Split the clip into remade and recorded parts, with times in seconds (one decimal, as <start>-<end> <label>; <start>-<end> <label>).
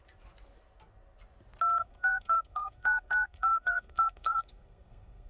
0.0-1.8 recorded; 1.8-5.3 remade